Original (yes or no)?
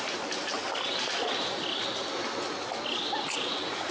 yes